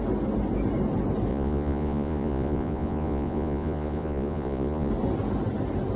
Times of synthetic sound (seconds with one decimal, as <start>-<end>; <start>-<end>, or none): 1.3-4.9